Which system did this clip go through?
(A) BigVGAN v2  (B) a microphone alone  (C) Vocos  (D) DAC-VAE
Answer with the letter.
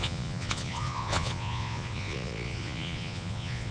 C